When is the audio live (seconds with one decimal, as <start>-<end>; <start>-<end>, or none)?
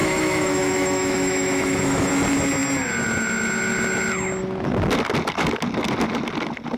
2.1-6.8